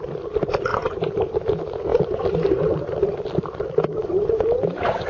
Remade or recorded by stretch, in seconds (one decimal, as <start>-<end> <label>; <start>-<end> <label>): 0.0-0.7 recorded; 0.7-1.3 remade; 1.3-1.9 recorded; 1.9-5.1 remade